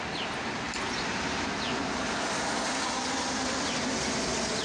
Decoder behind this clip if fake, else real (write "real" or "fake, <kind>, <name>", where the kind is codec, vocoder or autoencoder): real